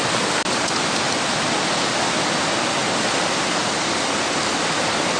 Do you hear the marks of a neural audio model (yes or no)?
no